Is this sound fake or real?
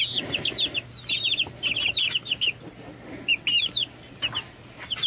real